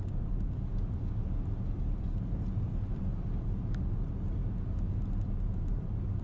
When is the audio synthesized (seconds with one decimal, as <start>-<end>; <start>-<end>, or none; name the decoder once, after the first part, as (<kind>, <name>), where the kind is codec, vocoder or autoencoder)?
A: none